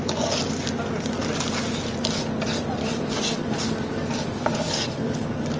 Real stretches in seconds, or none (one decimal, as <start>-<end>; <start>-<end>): 0.0-2.8